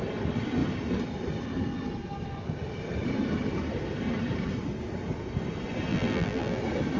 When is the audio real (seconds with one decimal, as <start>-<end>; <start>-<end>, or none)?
0.0-5.9; 6.6-7.0